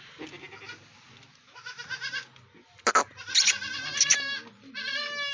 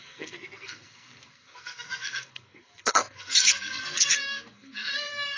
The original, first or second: first